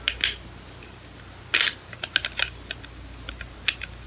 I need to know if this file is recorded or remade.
recorded